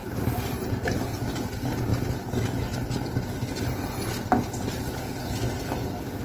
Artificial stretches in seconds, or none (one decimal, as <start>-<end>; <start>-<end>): 0.0-1.2

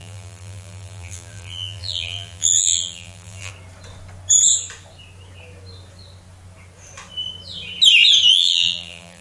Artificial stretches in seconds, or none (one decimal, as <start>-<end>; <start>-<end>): 0.0-3.5; 8.3-9.2

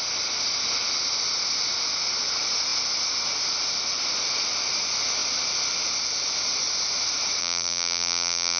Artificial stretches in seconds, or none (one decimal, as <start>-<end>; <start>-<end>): 7.4-8.6

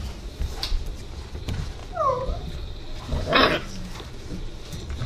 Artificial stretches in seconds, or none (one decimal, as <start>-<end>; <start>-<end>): 1.8-4.5

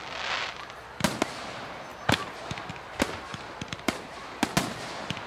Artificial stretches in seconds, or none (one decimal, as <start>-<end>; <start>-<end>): 3.3-4.2

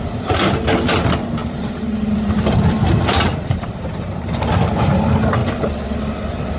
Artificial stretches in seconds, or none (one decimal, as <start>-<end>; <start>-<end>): 1.4-4.2; 5.4-6.0

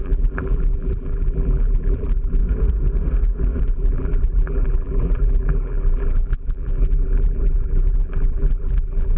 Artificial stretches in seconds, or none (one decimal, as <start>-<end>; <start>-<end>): 0.0-2.4; 3.6-9.2

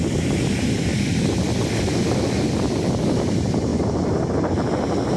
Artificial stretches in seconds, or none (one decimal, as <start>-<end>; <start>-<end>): 0.9-1.4; 3.7-4.2